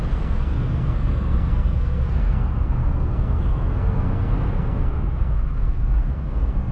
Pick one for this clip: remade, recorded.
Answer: remade